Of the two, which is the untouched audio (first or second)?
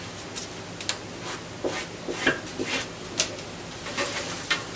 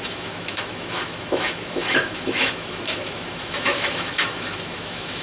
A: first